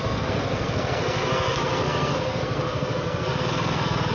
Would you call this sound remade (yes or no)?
yes